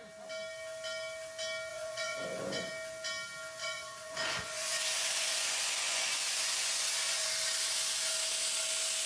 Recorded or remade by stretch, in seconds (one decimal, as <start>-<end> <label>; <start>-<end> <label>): 0.0-1.7 recorded; 1.7-2.7 remade; 2.7-3.6 recorded; 3.6-7.3 remade; 7.3-9.1 recorded